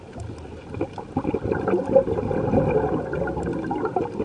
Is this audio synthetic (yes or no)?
no